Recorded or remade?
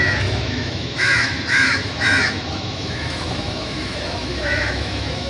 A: remade